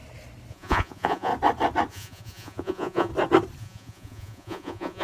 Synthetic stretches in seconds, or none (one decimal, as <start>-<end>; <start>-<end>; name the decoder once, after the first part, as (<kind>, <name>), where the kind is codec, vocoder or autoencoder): 0.5-1.3 (vocoder, Vocos); 1.9-3.1; 3.6-5.0